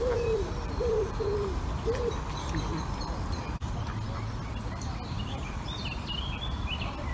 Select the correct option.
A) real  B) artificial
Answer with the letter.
B